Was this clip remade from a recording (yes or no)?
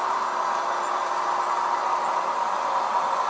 no